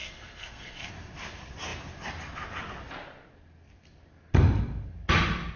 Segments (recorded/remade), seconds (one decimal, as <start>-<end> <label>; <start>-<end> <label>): 0.0-0.9 remade; 0.9-5.6 recorded